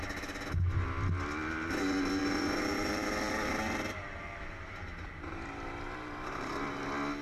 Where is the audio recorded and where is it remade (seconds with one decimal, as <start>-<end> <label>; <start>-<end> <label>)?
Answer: 0.0-2.2 recorded; 2.2-6.5 remade; 6.5-7.2 recorded